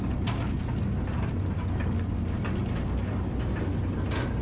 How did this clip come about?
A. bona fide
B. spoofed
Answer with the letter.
A